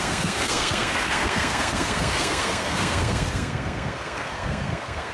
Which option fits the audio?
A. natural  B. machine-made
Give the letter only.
B